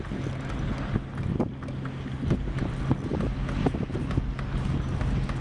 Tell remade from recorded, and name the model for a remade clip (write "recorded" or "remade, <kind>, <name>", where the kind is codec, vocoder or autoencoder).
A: recorded